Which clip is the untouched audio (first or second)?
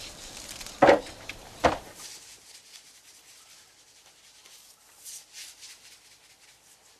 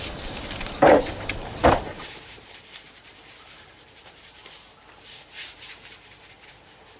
first